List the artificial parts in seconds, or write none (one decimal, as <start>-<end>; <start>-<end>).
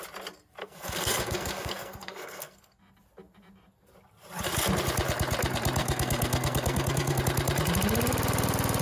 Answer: 0.6-2.8; 5.8-7.2